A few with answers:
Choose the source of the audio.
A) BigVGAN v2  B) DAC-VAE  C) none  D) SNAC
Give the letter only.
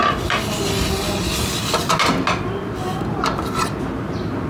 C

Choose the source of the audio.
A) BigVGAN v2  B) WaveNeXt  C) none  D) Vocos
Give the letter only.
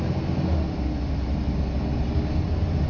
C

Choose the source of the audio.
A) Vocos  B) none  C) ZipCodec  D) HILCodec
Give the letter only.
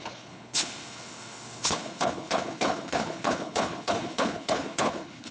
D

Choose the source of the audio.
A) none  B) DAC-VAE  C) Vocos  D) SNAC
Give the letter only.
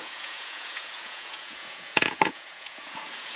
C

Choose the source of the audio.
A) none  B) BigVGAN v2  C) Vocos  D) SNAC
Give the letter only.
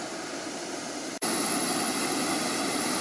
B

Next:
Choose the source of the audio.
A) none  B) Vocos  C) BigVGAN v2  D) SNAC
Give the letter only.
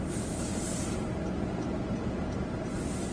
A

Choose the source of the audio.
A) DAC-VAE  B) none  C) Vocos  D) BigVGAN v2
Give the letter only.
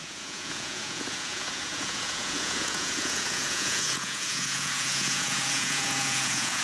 C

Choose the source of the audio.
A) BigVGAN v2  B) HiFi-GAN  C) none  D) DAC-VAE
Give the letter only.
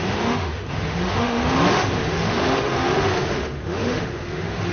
D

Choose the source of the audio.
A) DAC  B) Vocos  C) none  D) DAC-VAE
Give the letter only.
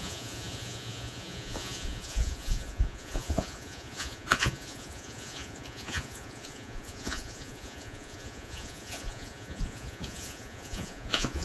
B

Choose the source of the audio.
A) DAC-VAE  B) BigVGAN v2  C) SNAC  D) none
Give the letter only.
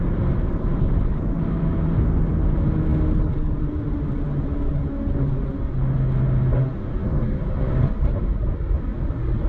D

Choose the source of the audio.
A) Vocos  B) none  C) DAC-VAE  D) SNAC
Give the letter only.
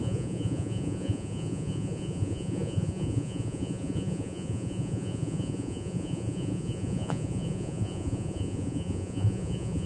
A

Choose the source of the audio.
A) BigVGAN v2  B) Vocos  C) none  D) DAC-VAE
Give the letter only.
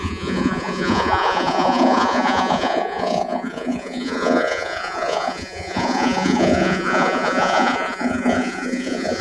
B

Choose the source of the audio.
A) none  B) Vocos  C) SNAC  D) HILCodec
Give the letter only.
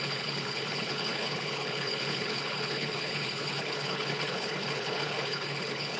D